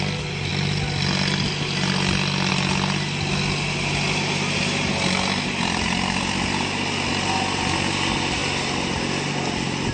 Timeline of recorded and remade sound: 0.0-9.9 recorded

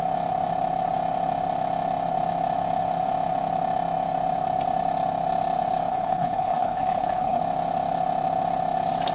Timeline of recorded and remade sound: 0.0-5.9 recorded; 5.9-7.4 remade; 7.4-9.1 recorded

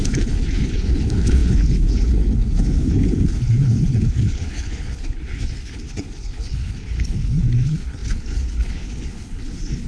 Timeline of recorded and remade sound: 0.0-9.9 remade

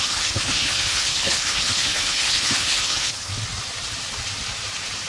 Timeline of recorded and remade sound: 0.0-3.3 remade; 3.3-5.1 recorded

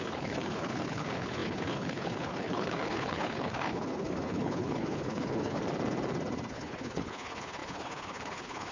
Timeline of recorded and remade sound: 0.0-5.6 remade; 5.6-6.5 recorded; 6.5-8.7 remade